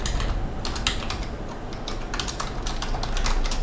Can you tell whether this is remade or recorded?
recorded